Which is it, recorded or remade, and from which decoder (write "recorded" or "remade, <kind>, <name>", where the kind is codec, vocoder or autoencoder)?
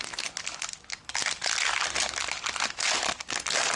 recorded